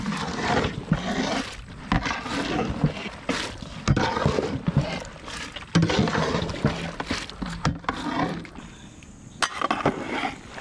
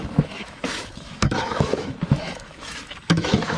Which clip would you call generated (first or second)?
second